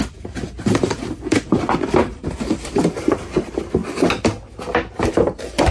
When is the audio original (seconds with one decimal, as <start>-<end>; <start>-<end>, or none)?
3.8-5.1

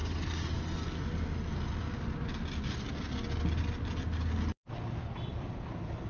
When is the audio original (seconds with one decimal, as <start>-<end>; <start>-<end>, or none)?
0.0-6.1

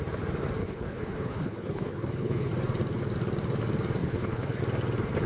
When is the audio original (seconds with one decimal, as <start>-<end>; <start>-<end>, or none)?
0.0-0.6; 2.5-4.0; 4.6-5.3